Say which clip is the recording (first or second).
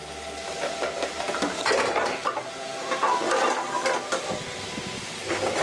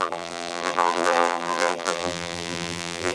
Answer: first